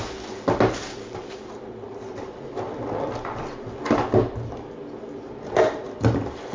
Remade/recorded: recorded